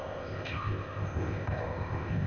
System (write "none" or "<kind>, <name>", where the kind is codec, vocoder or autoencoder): codec, ZipCodec